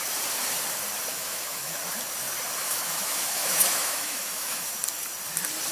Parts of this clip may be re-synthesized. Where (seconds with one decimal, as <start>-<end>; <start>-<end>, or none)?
1.1-1.7; 2.6-4.7